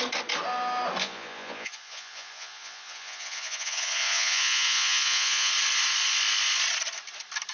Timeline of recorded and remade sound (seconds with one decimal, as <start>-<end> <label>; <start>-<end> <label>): 0.0-1.0 recorded; 1.0-5.5 remade; 5.5-7.5 recorded